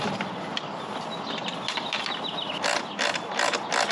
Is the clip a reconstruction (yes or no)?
no